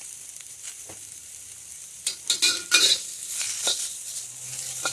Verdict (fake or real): fake